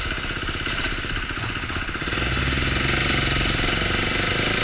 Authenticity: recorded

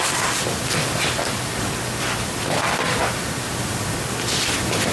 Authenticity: recorded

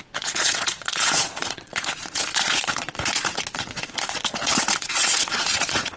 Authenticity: remade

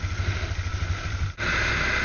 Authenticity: recorded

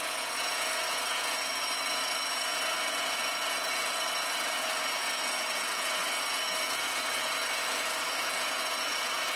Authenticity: remade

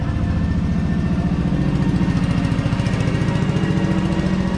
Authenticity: recorded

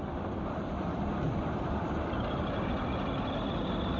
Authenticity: recorded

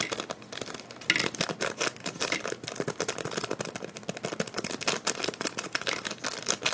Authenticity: recorded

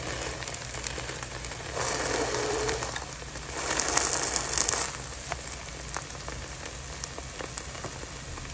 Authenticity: recorded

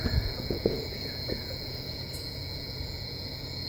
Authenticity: remade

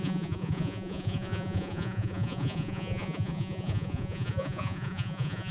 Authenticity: remade